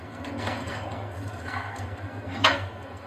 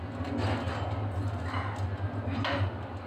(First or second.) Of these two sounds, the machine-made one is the first